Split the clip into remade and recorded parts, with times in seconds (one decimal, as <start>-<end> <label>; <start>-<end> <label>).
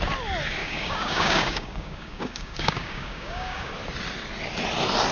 0.0-0.6 recorded; 0.6-3.7 remade; 3.7-5.1 recorded